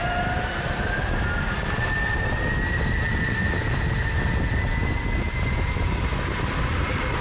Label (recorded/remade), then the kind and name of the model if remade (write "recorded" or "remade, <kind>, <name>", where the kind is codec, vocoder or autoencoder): recorded